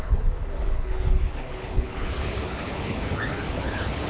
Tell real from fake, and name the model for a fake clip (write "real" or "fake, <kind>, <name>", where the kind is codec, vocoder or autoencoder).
fake, codec, HILCodec